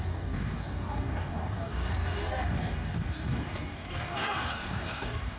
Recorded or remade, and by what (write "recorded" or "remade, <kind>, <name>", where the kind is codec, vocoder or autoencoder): remade, codec, DAC